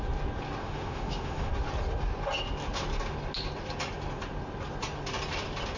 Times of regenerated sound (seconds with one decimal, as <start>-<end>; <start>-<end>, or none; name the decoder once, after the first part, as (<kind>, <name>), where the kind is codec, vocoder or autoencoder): 0.6-1.5 (autoencoder, DAC-VAE)